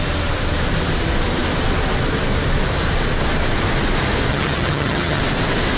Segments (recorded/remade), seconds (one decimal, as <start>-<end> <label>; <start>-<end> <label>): 0.0-4.3 recorded; 4.3-5.2 remade; 5.2-5.8 recorded